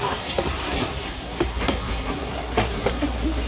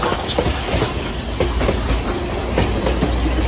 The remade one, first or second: first